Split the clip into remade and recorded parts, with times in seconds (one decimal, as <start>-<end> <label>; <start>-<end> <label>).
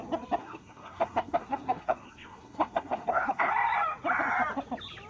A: 0.0-0.4 recorded; 0.4-3.5 remade; 3.5-5.1 recorded